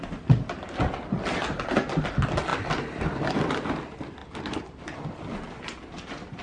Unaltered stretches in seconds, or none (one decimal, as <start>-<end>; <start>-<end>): 0.0-2.5; 3.5-4.2; 5.0-6.4